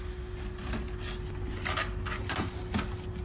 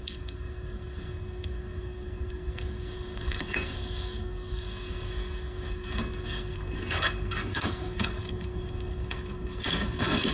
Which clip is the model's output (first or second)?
second